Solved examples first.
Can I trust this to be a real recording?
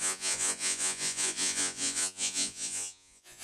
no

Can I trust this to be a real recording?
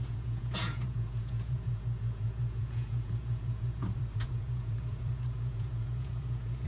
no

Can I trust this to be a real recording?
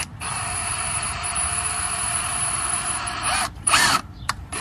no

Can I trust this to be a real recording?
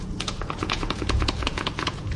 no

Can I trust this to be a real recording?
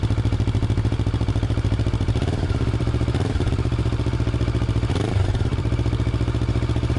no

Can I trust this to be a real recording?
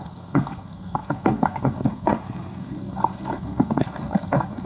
no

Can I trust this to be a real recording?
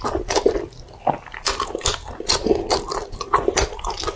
yes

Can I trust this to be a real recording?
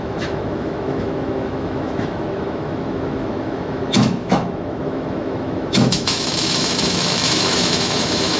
no